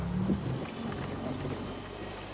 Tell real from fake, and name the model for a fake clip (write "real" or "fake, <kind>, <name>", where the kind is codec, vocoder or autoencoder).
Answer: real